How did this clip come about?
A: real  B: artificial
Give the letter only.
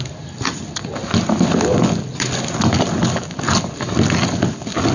A